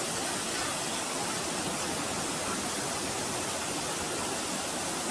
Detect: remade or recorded recorded